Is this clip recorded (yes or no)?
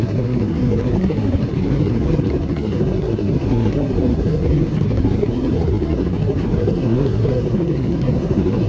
no